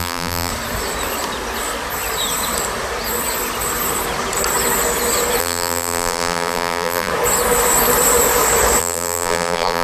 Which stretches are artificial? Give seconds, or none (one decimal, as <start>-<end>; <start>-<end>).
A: 0.0-0.5; 5.4-7.1; 8.8-9.8